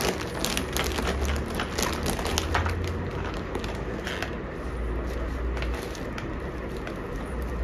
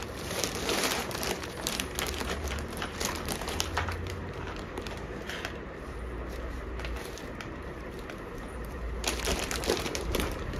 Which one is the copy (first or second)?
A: second